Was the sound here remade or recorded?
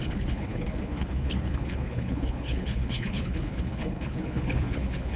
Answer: remade